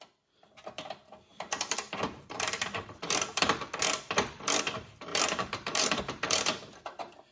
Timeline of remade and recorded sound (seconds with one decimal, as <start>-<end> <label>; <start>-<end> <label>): 0.0-1.3 recorded; 1.3-4.1 remade; 4.1-5.1 recorded; 5.1-6.0 remade; 6.0-7.3 recorded